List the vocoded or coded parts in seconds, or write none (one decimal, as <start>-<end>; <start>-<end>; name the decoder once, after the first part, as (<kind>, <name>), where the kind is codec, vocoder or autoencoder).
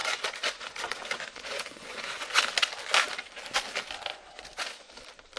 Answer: 0.0-2.4 (vocoder, Vocos); 4.1-4.9